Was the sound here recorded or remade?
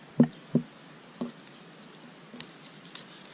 recorded